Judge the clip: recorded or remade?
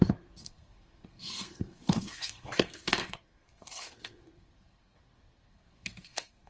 remade